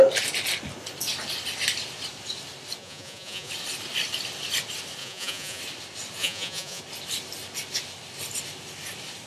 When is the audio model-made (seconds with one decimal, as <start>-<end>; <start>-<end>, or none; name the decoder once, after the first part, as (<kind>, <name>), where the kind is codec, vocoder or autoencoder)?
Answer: 2.8-3.5 (vocoder, Vocos); 5.0-5.6; 6.2-6.8

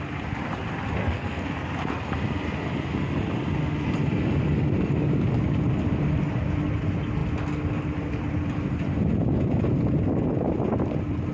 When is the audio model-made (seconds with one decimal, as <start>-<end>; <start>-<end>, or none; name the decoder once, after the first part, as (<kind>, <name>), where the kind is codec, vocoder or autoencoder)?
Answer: 1.0-1.5 (codec, SNAC)

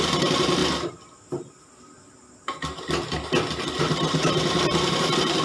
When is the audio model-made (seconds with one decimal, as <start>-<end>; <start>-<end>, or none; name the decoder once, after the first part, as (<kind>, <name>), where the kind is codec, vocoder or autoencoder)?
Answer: 0.0-0.6 (vocoder, BigVGAN v2); 3.8-5.4

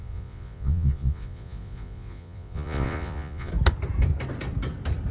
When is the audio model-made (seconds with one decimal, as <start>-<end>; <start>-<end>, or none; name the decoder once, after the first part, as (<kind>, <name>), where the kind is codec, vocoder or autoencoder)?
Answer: 0.0-3.5 (vocoder, Vocos)

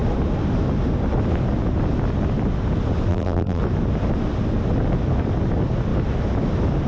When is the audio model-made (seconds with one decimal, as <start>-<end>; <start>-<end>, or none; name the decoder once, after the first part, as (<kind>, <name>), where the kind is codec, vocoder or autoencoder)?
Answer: 3.1-3.6 (vocoder, BigVGAN v2)